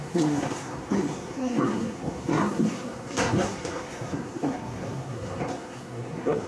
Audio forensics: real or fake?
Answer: fake